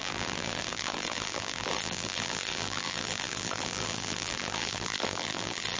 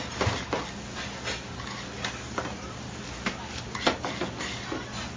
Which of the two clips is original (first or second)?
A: second